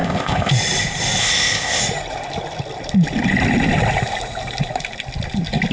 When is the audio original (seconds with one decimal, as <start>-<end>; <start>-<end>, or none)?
0.5-1.2; 1.8-5.7